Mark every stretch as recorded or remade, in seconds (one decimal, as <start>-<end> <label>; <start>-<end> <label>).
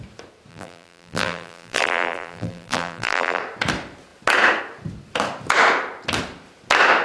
0.0-0.5 recorded; 0.5-3.4 remade; 3.4-7.0 recorded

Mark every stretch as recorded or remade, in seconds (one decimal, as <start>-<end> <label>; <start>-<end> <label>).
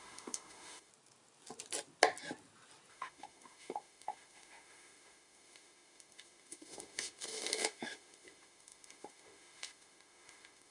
0.0-0.9 remade; 0.9-2.9 recorded; 2.9-10.7 remade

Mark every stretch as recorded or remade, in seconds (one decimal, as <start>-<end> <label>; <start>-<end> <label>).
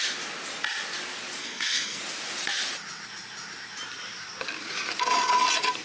0.0-1.4 recorded; 1.4-2.0 remade; 2.0-5.8 recorded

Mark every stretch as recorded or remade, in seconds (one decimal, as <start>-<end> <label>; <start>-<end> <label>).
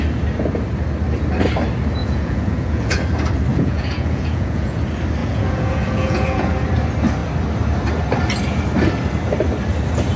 0.0-2.0 recorded; 2.0-3.0 remade; 3.0-3.5 recorded; 3.5-4.8 remade; 4.8-5.2 recorded; 5.2-6.5 remade; 6.5-10.2 recorded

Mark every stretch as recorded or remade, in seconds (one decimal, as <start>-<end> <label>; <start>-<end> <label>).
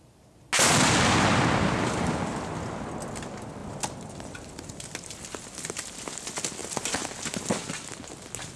0.0-8.6 recorded